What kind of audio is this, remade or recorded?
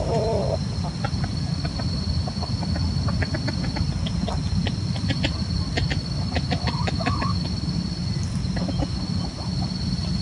recorded